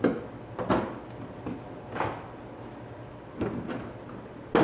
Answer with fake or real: real